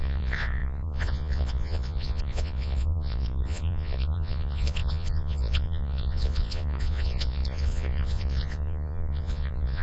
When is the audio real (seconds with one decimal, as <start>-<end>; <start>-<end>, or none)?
none